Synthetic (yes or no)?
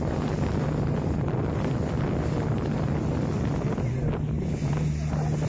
no